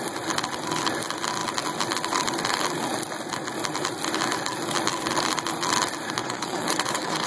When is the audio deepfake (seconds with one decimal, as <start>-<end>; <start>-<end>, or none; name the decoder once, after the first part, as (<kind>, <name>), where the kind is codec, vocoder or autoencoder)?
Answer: 6.2-7.3 (vocoder, WaveNeXt)